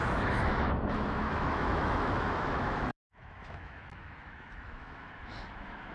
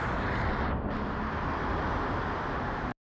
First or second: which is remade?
first